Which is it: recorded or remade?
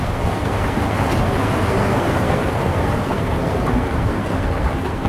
remade